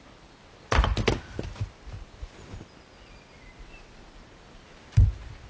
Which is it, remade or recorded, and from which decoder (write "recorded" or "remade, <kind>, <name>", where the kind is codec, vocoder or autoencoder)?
recorded